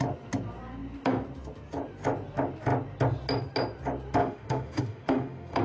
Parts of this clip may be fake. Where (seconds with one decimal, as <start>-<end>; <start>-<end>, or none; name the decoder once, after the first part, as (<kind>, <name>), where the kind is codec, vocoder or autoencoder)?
4.2-5.6 (autoencoder, DAC-VAE)